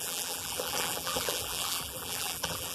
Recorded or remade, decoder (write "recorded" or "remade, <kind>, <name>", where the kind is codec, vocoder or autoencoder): remade, vocoder, BigVGAN v2